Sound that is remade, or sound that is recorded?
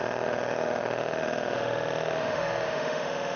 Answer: remade